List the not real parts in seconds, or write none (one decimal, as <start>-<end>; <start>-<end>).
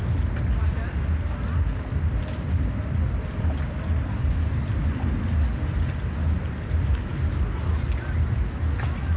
none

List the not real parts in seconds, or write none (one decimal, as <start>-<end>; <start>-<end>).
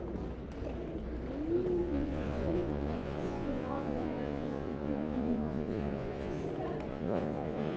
1.8-6.4; 6.9-7.8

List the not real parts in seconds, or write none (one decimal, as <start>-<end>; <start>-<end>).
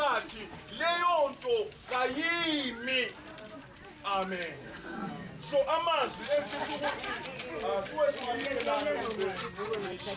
4.6-5.1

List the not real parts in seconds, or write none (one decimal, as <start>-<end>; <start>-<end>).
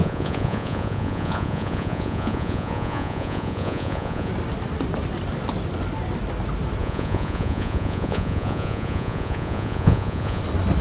0.0-4.3; 6.8-10.4